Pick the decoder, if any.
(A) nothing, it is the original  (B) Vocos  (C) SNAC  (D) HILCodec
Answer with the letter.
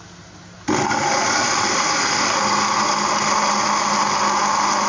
A